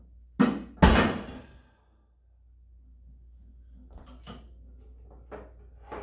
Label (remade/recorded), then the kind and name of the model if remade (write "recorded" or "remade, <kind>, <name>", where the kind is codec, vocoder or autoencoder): recorded